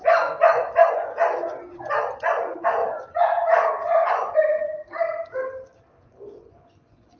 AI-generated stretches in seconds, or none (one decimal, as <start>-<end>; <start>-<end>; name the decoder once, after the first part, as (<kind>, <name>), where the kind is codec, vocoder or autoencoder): 0.0-1.2 (vocoder, Vocos); 2.2-2.8; 3.7-4.8; 6.1-7.2